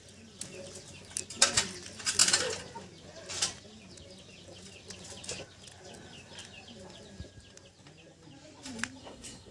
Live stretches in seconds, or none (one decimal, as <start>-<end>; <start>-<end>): 0.0-9.0